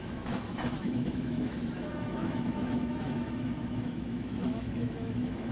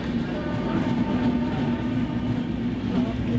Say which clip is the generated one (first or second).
first